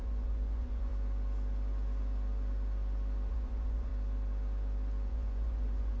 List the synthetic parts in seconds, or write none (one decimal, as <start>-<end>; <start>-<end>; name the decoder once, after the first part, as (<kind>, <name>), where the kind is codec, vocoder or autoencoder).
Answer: 0.0-0.9 (vocoder, Vocos); 3.3-3.9; 5.1-6.0